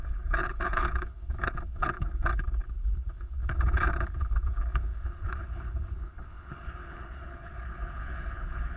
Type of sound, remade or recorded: remade